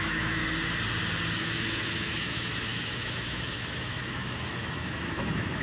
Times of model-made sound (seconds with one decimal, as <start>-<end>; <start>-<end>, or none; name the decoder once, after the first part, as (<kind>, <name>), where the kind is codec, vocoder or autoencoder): 0.0-0.4 (autoencoder, DAC-VAE); 1.4-5.6